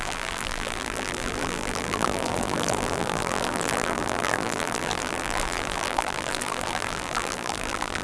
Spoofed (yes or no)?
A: yes